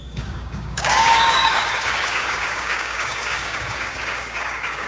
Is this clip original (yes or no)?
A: no